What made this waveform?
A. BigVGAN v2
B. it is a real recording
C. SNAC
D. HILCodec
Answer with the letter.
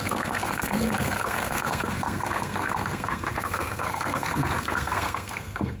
C